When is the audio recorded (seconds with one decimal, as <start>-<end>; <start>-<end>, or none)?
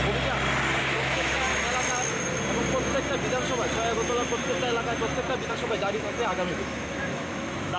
0.0-0.8; 1.5-5.5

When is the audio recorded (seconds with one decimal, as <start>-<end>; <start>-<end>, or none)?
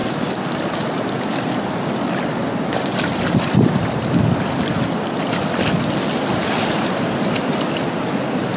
0.0-8.6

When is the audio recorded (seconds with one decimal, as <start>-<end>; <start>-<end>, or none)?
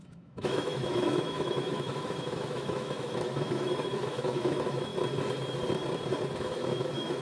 4.9-6.4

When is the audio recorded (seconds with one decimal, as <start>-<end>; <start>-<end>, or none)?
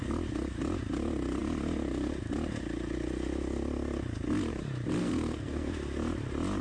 0.0-5.0; 5.7-6.6